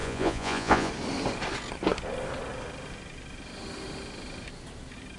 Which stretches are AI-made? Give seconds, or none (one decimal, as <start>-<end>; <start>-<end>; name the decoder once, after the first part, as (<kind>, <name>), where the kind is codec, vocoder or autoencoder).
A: 0.0-0.9 (vocoder, Vocos)